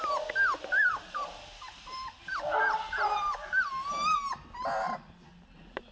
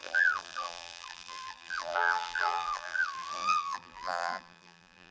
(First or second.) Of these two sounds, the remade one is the second